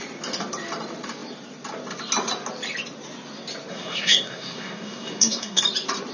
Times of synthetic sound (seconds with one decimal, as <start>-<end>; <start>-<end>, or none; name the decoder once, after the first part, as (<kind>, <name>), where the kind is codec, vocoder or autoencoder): 3.7-5.6 (codec, SNAC)